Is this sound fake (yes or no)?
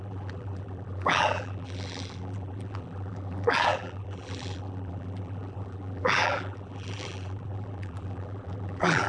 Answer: yes